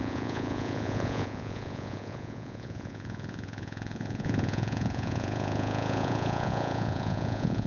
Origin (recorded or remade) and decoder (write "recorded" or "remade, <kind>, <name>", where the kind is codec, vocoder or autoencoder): remade, vocoder, Vocos